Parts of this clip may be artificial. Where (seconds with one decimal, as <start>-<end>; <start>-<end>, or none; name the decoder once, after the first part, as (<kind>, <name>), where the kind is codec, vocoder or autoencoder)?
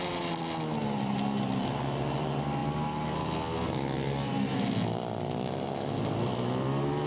none